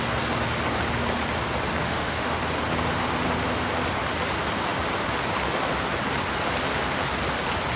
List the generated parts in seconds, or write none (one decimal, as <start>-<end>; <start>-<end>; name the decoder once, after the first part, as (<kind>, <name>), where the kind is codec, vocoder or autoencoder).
1.8-2.4 (autoencoder, DAC-VAE)